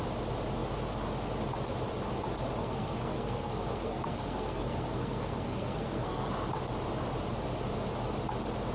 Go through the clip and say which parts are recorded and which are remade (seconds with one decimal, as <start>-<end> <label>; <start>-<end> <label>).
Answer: 0.0-2.6 recorded; 2.6-6.3 remade; 6.3-8.7 recorded